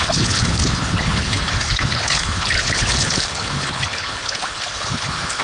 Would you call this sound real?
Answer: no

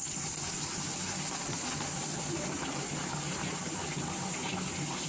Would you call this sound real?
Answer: yes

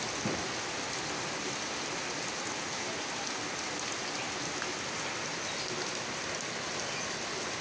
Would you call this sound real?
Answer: yes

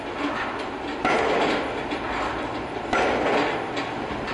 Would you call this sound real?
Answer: yes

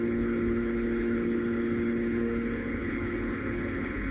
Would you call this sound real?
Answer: no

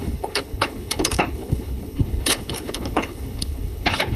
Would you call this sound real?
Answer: no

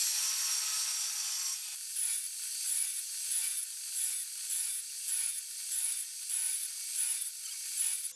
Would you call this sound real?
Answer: yes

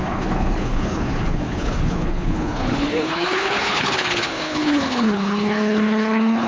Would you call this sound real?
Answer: no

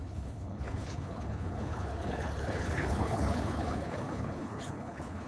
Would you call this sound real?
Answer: no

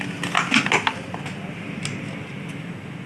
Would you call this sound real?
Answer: yes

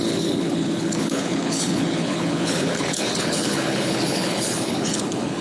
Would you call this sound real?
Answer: no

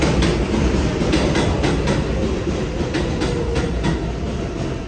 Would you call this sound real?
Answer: yes